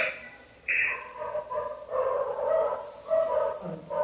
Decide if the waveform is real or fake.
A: real